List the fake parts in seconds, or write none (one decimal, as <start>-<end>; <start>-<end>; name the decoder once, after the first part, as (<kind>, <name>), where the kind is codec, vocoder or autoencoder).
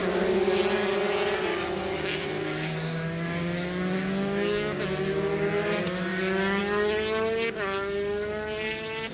0.0-0.6 (codec, DAC); 1.5-4.8; 6.1-6.6